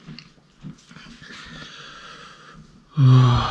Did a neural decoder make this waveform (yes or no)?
no